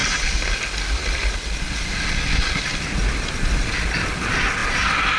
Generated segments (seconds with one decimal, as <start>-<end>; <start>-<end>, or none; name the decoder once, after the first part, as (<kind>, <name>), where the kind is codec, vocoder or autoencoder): none